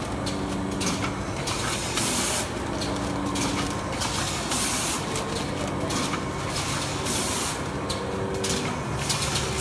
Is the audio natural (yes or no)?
yes